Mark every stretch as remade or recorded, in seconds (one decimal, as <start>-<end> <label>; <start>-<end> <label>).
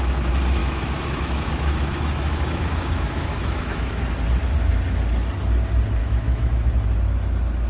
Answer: 0.0-0.6 recorded; 0.6-4.0 remade; 4.0-6.0 recorded; 6.0-6.7 remade; 6.7-7.7 recorded